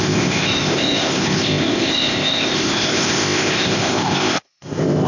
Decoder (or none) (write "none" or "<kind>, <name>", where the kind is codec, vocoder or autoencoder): codec, ZipCodec